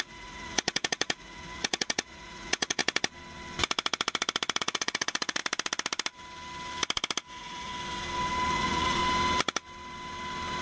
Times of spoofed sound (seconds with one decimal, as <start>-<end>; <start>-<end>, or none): 0.0-2.8; 4.6-5.4; 7.3-7.7; 8.5-9.0